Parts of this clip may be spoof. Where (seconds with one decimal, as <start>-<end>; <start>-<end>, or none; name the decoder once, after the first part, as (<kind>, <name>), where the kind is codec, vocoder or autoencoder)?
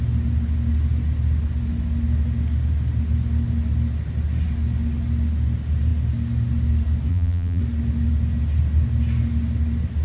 7.1-7.6 (vocoder, BigVGAN v2)